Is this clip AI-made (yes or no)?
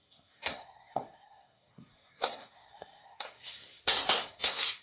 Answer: yes